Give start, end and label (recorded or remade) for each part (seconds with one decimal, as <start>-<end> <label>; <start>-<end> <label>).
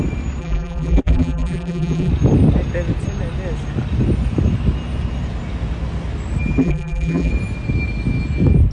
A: 0.0-0.4 recorded; 0.4-2.1 remade; 2.1-6.6 recorded; 6.6-7.3 remade; 7.3-8.7 recorded